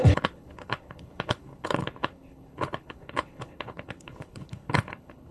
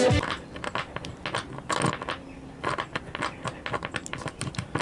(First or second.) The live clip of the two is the second